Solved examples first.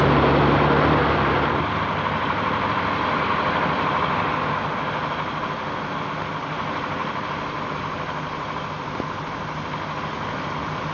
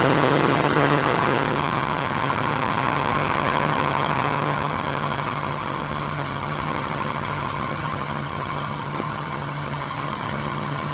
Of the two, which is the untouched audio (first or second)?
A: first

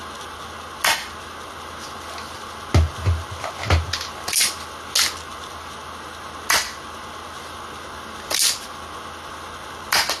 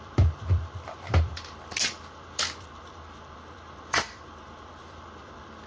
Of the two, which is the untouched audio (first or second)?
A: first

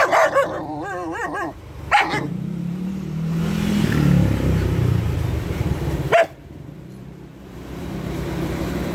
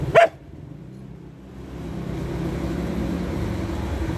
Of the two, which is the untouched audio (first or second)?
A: second